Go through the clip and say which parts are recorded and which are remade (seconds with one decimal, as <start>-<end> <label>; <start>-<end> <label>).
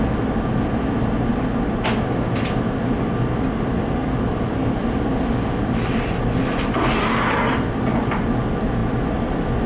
0.0-9.7 recorded